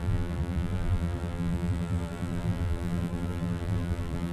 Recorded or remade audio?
remade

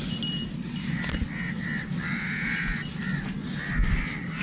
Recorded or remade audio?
recorded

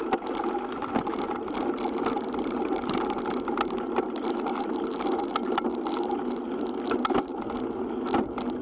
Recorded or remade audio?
recorded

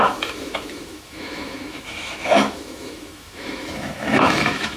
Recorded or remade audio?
remade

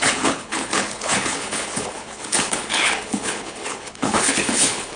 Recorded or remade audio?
remade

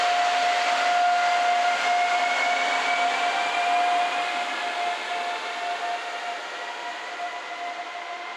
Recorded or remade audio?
recorded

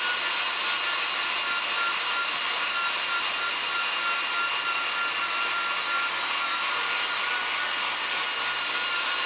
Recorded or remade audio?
recorded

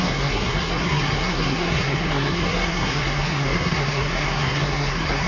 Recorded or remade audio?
remade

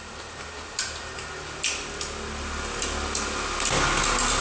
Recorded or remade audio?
recorded